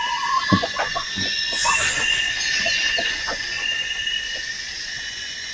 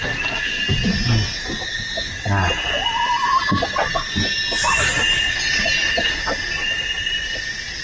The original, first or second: second